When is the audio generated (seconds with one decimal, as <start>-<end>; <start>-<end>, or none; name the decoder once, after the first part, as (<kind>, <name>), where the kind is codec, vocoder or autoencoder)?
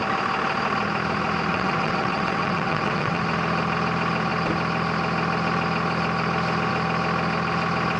1.5-3.2 (vocoder, WaveNeXt)